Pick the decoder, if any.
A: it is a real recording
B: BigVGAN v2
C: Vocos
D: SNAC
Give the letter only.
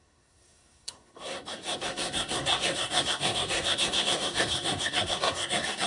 D